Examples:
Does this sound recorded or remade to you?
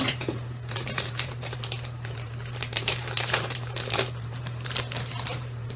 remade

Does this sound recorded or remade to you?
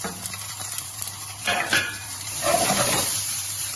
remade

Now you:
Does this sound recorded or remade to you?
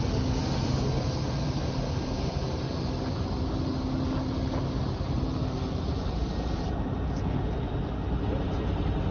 recorded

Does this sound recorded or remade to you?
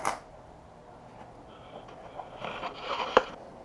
recorded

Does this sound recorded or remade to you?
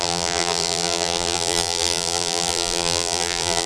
remade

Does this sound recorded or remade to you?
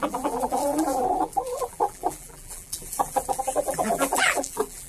remade